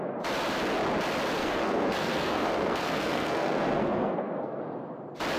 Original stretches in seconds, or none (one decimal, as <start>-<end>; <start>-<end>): 0.0-1.4; 4.6-5.4